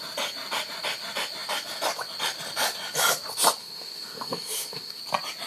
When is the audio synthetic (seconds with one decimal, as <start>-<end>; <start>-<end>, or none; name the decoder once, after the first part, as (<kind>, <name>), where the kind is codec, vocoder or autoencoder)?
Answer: 3.6-5.0 (autoencoder, DAC-VAE)